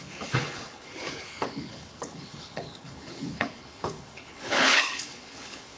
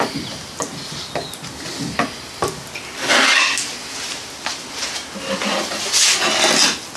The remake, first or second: first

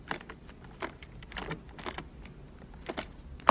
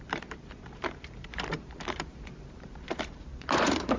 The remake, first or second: second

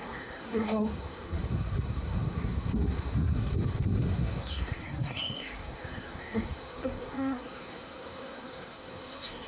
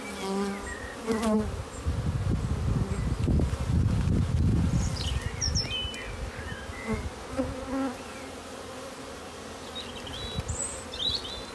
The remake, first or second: first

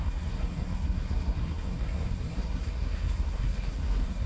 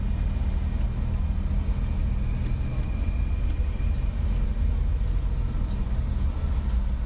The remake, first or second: first